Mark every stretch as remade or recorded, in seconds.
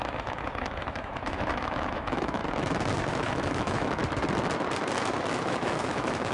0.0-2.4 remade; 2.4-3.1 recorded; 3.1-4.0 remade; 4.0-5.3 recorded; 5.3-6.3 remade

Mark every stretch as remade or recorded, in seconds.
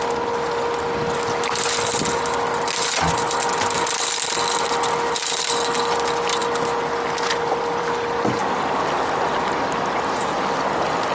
0.0-11.1 recorded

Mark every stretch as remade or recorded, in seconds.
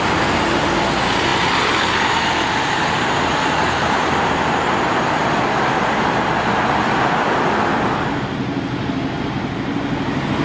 0.0-10.4 recorded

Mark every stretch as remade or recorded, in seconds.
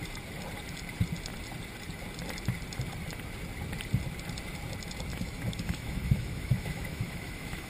0.0-5.1 recorded; 5.1-7.7 remade